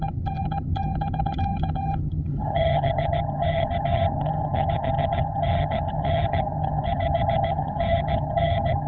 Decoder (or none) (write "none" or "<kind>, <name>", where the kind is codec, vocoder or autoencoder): vocoder, HiFi-GAN